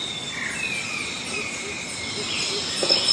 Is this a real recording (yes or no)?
yes